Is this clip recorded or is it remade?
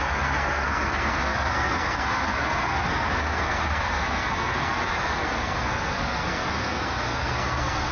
remade